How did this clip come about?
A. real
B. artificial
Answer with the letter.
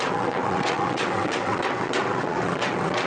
B